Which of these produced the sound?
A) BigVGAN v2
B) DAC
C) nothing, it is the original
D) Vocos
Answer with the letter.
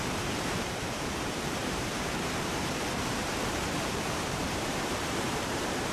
A